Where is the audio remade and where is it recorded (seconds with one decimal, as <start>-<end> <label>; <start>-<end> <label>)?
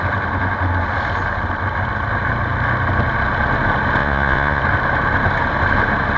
0.0-4.0 recorded; 4.0-4.6 remade; 4.6-6.2 recorded